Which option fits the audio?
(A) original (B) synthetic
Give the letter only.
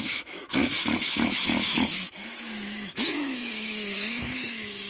B